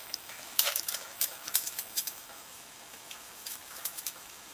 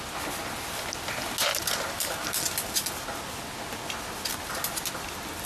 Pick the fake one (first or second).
first